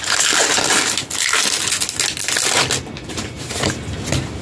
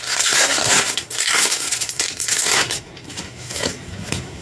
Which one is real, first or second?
first